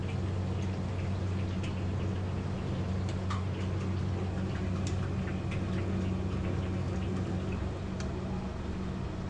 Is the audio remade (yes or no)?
no